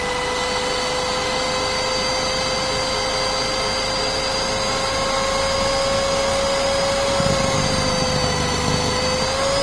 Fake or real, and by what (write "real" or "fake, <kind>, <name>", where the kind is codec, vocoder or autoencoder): real